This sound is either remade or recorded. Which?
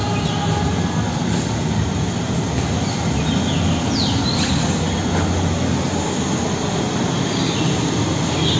recorded